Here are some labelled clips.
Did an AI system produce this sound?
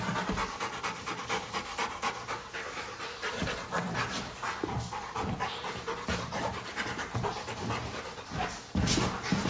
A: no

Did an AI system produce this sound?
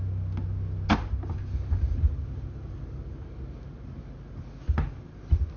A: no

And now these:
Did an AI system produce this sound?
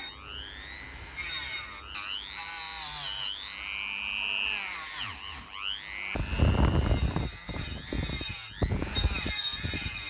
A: no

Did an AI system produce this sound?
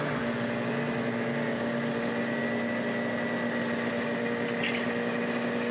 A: no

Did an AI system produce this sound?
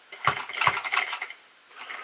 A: no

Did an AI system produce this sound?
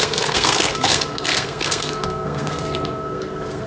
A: yes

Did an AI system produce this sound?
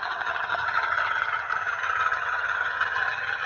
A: yes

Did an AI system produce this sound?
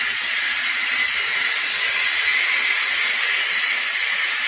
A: no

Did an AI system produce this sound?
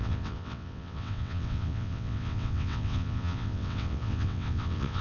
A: yes